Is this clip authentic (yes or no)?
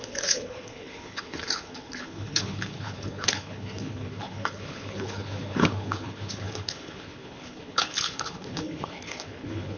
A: no